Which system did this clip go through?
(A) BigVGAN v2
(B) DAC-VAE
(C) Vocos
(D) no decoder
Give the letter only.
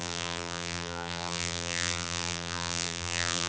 A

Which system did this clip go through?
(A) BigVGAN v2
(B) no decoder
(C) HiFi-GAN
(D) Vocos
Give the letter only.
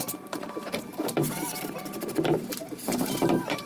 A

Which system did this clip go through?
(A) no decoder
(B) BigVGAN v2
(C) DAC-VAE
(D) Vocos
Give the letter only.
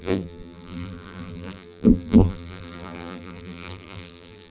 B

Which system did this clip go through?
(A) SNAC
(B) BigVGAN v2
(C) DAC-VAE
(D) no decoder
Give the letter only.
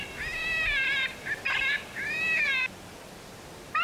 D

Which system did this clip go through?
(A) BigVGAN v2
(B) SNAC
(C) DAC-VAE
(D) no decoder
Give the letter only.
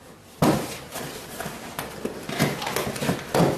D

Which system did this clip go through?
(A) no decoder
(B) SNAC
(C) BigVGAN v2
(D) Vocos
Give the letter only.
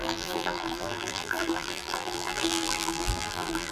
C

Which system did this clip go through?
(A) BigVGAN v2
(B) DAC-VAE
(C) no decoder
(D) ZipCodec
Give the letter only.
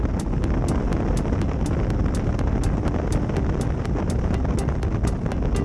C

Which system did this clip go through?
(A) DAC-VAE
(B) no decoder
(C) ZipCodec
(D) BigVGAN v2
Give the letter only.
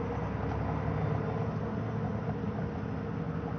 B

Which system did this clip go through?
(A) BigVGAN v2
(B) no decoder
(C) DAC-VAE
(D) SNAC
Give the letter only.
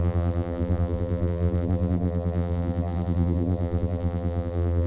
A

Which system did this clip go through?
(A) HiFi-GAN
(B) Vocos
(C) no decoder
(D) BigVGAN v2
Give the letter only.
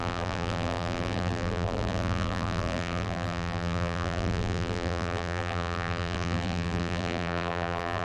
D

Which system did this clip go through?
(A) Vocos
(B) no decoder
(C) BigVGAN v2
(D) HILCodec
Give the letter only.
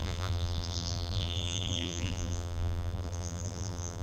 C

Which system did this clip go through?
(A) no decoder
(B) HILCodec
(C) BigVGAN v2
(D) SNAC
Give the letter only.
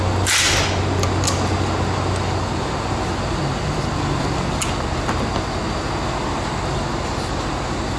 A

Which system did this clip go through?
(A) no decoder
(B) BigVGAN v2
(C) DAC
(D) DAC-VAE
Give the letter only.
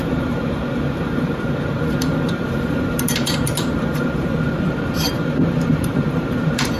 B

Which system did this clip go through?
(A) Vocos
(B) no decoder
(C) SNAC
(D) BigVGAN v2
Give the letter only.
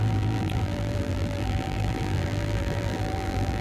D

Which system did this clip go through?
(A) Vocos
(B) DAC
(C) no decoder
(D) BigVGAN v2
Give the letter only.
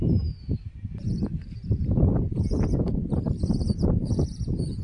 D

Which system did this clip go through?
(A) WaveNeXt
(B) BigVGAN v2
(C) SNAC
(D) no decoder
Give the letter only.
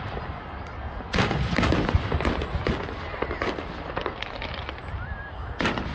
D